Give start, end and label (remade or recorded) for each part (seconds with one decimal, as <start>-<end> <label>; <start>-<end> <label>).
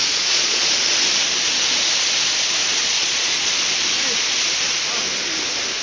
0.0-0.6 remade; 0.6-2.8 recorded; 2.8-3.5 remade; 3.5-5.8 recorded